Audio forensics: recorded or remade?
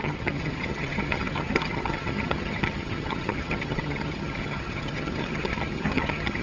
remade